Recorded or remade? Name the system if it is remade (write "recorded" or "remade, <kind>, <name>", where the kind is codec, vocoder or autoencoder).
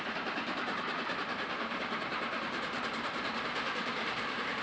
remade, vocoder, BigVGAN v2